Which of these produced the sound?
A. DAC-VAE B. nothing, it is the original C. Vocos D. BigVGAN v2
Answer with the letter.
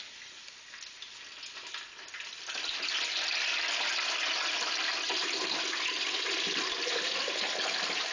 D